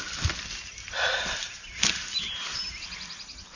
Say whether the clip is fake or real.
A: real